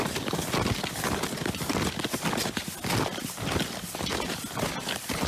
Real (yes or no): yes